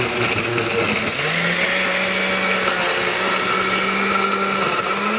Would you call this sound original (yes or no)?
yes